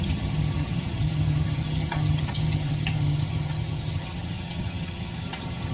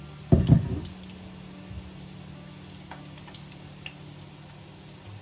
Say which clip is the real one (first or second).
second